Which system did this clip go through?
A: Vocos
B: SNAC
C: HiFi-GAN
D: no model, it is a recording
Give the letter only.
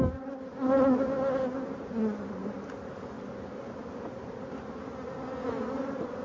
D